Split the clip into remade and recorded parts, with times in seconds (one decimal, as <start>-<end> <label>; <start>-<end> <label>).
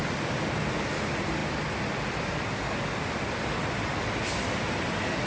0.0-5.3 recorded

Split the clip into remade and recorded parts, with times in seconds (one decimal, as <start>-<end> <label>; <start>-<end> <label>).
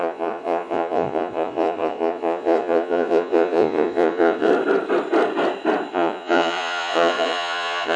0.0-4.5 remade; 4.5-5.9 recorded; 5.9-8.0 remade